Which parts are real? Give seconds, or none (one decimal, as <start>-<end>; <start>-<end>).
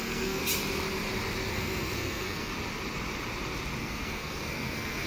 0.4-1.5; 2.5-3.8